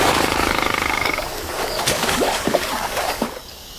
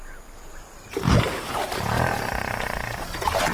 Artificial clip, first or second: first